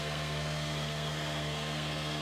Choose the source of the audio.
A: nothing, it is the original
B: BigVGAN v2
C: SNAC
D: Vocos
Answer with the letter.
C